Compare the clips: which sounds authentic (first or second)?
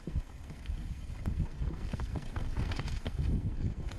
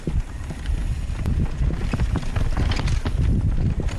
second